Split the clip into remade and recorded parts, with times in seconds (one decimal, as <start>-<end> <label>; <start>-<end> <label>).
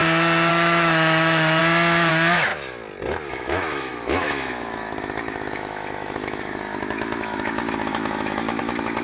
0.0-0.5 recorded; 0.5-1.6 remade; 1.6-2.1 recorded; 2.1-2.5 remade; 2.5-3.3 recorded; 3.3-9.0 remade